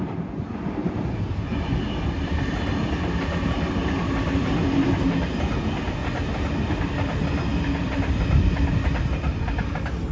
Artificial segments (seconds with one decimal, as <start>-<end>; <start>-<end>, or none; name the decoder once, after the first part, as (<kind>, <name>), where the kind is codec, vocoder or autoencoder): none